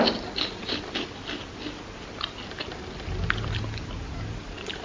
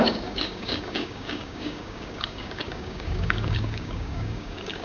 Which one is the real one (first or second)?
first